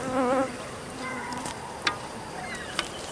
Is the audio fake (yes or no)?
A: no